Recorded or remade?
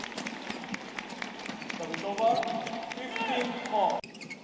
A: recorded